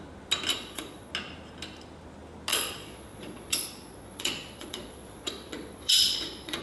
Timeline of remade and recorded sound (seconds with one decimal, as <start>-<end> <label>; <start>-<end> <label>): 0.0-0.5 recorded; 0.5-1.1 remade; 1.1-2.5 recorded; 2.5-6.6 remade